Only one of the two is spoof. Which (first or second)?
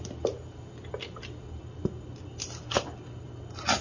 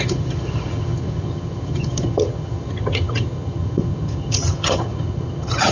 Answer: second